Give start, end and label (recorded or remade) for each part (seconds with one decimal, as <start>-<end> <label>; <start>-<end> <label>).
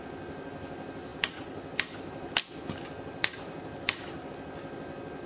0.0-5.3 recorded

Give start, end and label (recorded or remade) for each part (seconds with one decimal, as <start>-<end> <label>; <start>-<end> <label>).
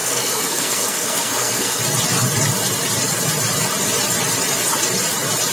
0.0-1.8 remade; 1.8-5.5 recorded